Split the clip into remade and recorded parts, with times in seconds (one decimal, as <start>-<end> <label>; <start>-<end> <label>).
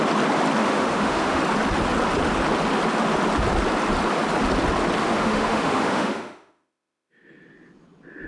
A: 0.0-0.6 recorded; 0.6-1.4 remade; 1.4-5.0 recorded; 5.0-7.1 remade; 7.1-8.3 recorded